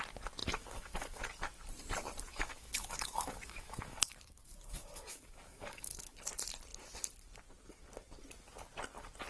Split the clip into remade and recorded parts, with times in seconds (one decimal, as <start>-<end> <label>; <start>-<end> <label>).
0.0-0.4 recorded; 0.4-1.2 remade; 1.2-2.3 recorded; 2.3-6.2 remade; 6.2-9.3 recorded